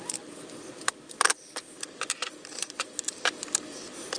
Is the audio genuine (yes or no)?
yes